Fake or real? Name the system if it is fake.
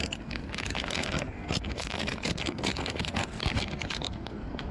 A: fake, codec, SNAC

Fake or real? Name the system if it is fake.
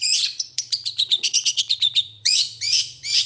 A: fake, vocoder, Vocos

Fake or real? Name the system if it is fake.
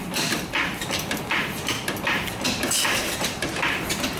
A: fake, vocoder, BigVGAN v2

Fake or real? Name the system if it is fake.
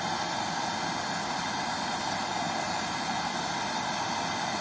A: real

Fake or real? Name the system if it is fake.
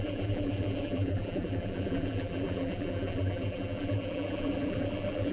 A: fake, vocoder, BigVGAN v2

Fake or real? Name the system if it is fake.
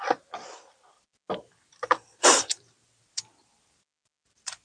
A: fake, vocoder, BigVGAN v2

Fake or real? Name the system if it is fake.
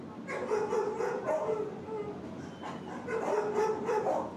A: real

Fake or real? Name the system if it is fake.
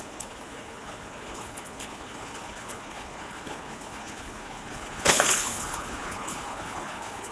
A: fake, codec, HILCodec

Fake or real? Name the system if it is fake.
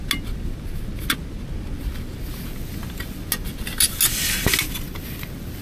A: real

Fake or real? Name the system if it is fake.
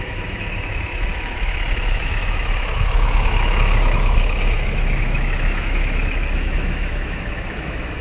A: fake, autoencoder, DAC-VAE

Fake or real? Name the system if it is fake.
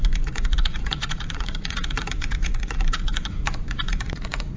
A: fake, vocoder, Vocos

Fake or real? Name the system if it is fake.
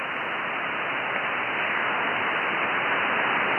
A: real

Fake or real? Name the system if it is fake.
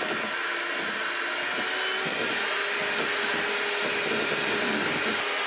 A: real